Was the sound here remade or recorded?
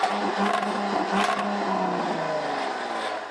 recorded